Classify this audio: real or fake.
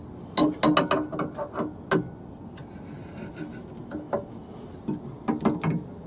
real